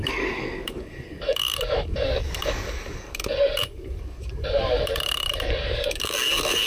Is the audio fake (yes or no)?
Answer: yes